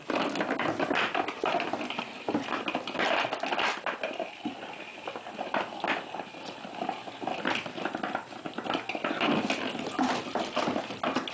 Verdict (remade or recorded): recorded